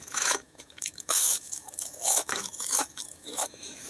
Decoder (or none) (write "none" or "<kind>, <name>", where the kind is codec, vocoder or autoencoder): autoencoder, DAC-VAE